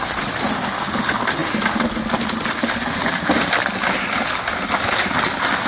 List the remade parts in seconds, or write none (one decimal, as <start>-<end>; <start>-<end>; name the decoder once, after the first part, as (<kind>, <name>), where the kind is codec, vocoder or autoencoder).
none